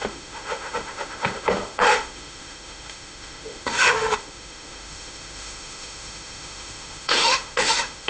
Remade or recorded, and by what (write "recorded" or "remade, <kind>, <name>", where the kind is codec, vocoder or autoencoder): remade, autoencoder, DAC-VAE